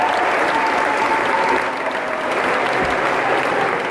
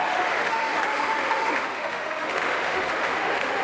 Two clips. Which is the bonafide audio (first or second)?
first